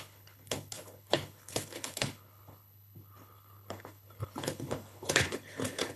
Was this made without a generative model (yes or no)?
no